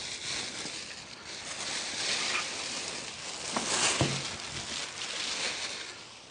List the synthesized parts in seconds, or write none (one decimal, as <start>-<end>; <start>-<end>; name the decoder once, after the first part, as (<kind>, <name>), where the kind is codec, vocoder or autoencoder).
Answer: none